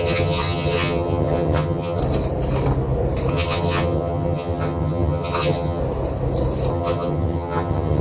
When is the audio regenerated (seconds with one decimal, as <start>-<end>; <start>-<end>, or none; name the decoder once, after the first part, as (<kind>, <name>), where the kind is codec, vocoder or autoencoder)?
0.0-2.0 (vocoder, HiFi-GAN); 3.3-5.8; 6.7-8.0